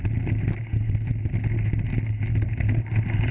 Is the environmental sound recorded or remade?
recorded